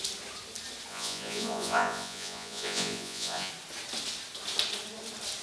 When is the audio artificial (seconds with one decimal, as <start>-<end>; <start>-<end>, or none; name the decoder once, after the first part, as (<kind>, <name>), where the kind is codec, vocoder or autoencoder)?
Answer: 0.9-3.5 (vocoder, Vocos)

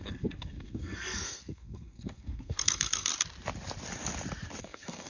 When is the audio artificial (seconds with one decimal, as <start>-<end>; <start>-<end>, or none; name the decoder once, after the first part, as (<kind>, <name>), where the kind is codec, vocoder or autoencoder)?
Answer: 0.0-3.1 (codec, SNAC); 4.6-5.1

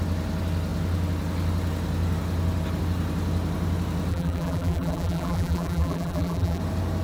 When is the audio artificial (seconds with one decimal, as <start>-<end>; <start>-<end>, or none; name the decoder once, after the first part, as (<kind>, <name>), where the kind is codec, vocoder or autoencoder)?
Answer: 4.1-6.6 (vocoder, BigVGAN v2)